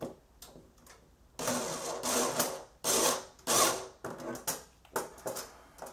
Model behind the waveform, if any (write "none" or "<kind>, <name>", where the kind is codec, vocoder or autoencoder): none